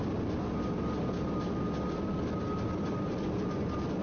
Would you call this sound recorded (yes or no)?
yes